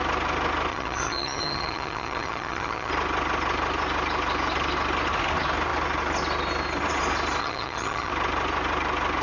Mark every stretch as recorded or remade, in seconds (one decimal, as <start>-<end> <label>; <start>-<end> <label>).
0.0-0.7 recorded; 0.7-2.9 remade; 2.9-7.4 recorded; 7.4-8.1 remade; 8.1-9.2 recorded